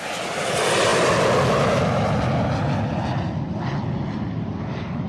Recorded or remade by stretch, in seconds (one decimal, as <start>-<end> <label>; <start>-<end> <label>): 0.0-5.1 recorded